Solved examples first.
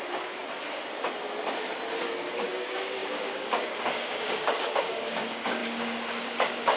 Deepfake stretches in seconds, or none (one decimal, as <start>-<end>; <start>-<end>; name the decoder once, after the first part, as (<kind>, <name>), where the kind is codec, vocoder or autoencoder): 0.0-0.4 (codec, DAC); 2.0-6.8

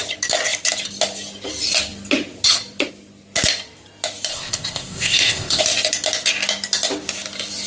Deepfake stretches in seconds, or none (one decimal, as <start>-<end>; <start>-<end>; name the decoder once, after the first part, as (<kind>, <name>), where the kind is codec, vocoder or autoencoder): 4.3-5.6 (codec, ZipCodec)

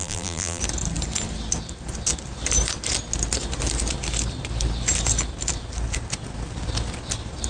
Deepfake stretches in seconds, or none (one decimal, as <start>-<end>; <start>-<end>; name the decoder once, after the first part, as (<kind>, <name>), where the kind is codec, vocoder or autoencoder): 0.0-0.6 (vocoder, BigVGAN v2)

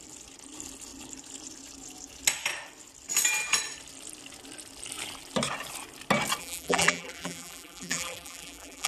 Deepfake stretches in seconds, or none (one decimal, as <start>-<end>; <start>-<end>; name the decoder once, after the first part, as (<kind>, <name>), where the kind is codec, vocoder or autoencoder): 6.4-8.9 (vocoder, BigVGAN v2)

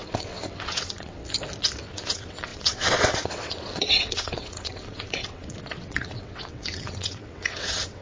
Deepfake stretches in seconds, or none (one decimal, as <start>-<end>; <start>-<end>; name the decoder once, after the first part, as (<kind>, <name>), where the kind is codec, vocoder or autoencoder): 0.0-1.2 (vocoder, WaveNeXt); 1.9-8.0